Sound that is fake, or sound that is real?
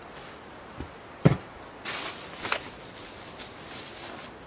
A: real